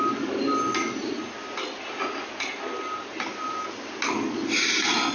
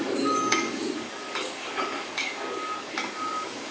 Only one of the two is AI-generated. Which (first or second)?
second